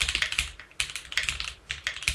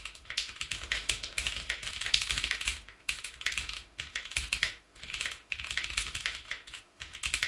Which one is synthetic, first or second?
second